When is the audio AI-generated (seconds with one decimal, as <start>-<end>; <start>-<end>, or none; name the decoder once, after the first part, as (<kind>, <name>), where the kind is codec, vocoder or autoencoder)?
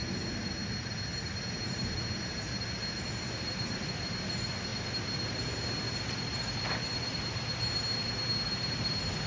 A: none